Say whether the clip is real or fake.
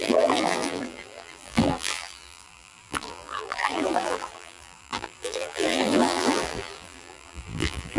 fake